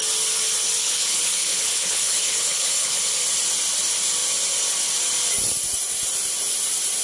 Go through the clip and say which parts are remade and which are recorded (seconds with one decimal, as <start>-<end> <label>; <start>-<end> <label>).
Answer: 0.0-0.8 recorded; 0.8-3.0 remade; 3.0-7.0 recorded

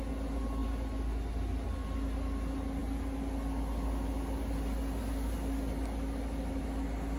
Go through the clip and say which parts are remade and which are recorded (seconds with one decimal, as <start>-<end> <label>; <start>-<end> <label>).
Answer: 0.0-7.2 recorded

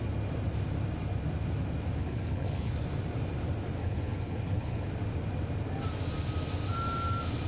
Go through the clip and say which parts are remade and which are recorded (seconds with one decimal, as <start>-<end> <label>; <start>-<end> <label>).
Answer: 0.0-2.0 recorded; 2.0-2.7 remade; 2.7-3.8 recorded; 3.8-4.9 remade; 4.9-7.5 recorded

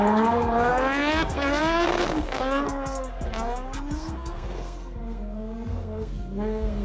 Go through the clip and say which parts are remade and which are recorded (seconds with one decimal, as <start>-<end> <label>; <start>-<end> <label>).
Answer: 0.0-6.8 remade

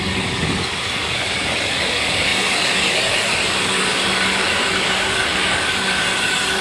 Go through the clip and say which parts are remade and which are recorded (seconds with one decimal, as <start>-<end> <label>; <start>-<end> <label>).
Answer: 0.0-6.6 remade